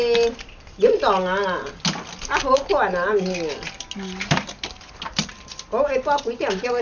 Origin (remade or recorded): recorded